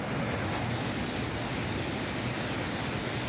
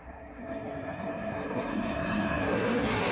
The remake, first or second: second